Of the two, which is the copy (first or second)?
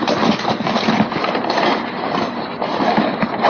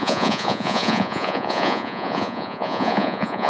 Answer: second